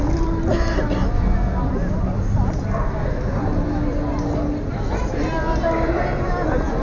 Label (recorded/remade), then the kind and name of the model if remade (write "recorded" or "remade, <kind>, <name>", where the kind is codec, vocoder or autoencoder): recorded